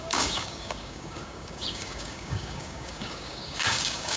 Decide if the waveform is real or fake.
fake